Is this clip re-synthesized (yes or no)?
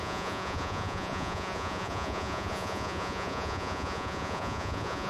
yes